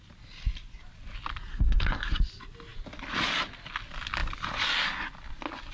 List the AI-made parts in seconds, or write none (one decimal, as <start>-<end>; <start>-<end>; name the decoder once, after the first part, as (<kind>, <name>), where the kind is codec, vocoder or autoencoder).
1.5-2.2 (codec, SNAC)